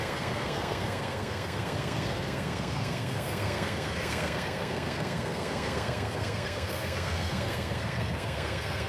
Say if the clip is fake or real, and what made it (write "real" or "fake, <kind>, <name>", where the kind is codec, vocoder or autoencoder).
fake, codec, SNAC